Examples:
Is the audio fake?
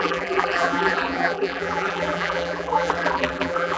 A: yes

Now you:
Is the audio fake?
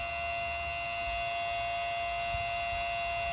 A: no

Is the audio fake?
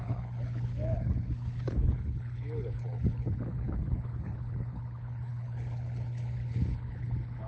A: yes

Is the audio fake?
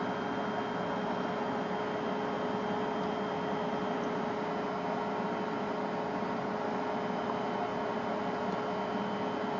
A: no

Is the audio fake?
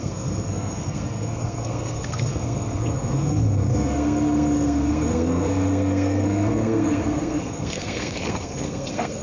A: yes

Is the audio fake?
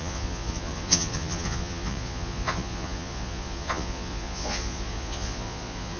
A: yes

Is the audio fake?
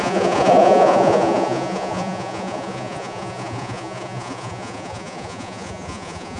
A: yes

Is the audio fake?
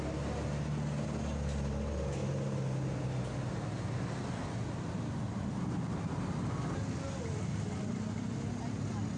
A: no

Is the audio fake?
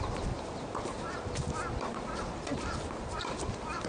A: no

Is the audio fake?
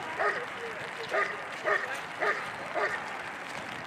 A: no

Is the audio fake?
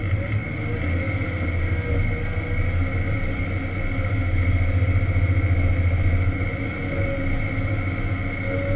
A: no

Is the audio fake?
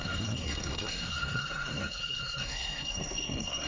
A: yes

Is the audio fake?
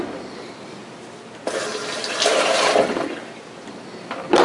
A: no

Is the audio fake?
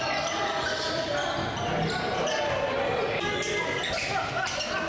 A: no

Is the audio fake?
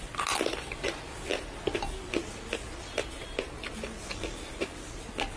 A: no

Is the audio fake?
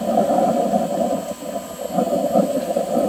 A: no